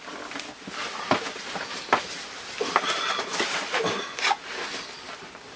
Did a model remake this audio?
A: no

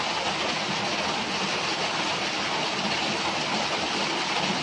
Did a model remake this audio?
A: no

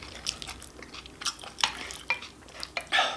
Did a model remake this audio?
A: no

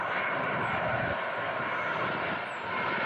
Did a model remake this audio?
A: no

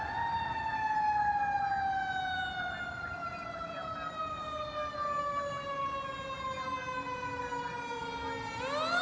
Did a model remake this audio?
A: no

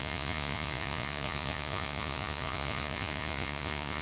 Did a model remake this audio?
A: yes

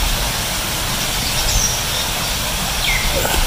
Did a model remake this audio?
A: no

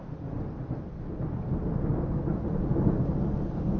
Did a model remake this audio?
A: no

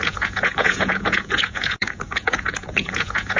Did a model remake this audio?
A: yes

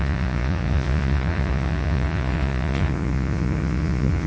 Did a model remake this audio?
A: yes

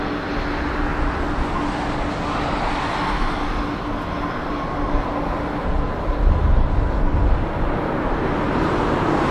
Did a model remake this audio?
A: no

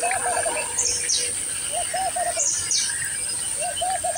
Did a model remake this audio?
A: no